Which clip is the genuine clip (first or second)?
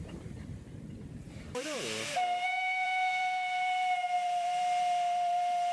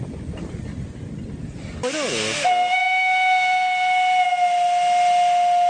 second